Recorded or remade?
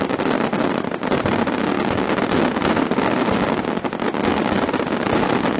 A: recorded